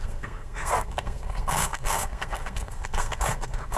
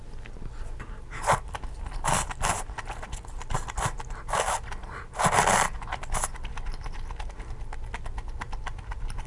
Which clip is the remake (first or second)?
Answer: first